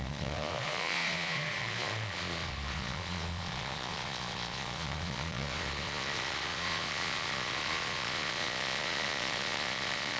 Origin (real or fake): fake